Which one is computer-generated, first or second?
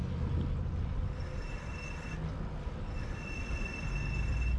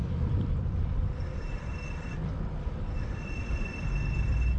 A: second